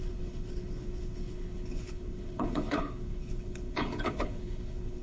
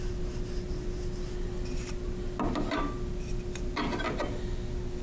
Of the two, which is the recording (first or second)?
second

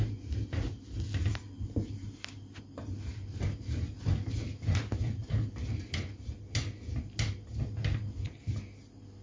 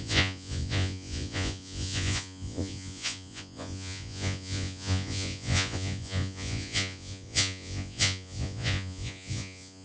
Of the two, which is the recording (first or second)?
first